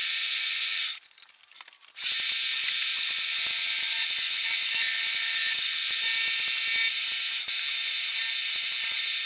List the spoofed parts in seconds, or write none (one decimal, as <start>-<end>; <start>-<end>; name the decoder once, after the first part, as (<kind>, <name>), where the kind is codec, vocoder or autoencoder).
0.0-0.8 (vocoder, Vocos); 2.9-6.0